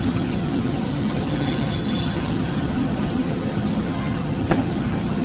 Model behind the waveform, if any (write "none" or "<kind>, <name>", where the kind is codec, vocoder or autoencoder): vocoder, HiFi-GAN